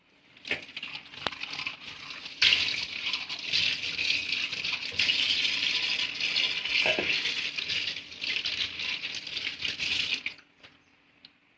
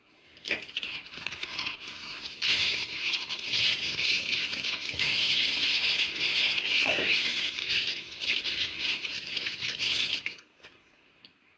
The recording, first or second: first